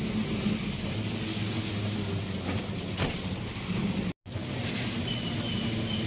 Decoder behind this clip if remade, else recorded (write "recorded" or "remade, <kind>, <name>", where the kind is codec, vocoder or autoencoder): recorded